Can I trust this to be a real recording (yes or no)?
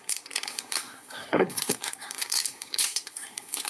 no